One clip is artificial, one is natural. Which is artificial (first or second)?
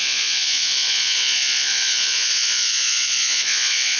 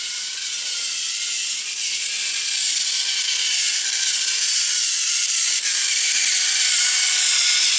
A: first